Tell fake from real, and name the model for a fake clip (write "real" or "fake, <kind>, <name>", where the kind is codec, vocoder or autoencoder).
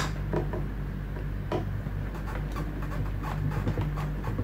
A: real